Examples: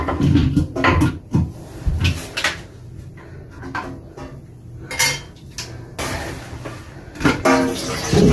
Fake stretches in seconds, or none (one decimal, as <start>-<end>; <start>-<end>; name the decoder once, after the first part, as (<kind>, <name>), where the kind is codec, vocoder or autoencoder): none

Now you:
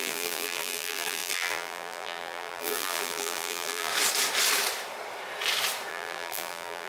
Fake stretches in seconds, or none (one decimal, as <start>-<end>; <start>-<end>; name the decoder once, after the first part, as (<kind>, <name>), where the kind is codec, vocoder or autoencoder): 0.0-3.9 (vocoder, BigVGAN v2); 5.9-6.9

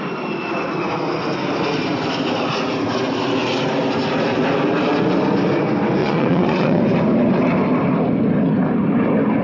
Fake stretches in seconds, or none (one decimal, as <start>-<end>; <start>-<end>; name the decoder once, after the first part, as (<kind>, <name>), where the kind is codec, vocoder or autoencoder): 6.0-6.8 (vocoder, Vocos)

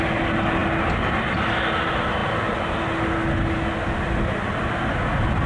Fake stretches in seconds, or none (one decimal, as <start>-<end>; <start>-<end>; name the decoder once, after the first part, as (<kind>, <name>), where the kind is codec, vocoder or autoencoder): none

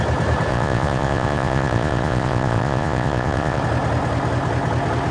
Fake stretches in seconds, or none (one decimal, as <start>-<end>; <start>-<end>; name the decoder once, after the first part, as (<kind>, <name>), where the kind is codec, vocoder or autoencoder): 0.5-3.6 (vocoder, Vocos)

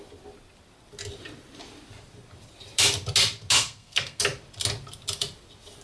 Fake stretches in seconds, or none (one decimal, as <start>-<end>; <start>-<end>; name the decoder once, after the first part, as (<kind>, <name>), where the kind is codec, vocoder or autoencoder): 3.6-4.2 (codec, SNAC)